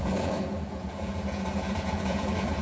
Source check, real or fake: fake